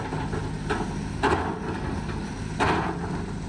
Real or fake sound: real